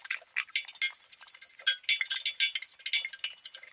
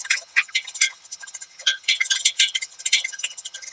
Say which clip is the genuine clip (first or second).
first